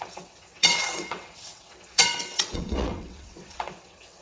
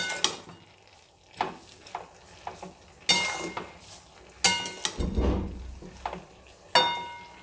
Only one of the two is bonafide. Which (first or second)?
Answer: second